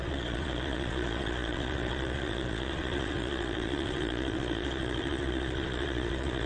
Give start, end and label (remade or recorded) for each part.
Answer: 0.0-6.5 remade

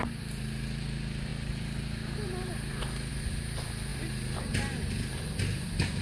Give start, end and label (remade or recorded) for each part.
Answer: 0.0-6.0 recorded

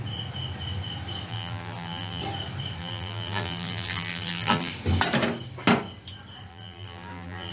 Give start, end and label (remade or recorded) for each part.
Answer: 0.0-1.3 recorded; 1.3-2.2 remade; 2.2-2.8 recorded; 2.8-4.7 remade; 4.7-6.5 recorded; 6.5-7.5 remade